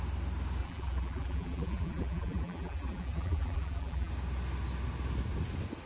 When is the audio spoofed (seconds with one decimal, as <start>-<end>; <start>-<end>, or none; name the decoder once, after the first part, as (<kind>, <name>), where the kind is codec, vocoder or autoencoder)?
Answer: 0.6-4.1 (vocoder, BigVGAN v2)